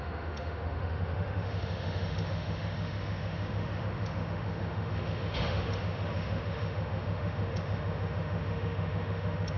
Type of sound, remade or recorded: remade